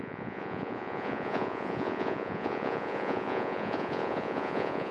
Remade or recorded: remade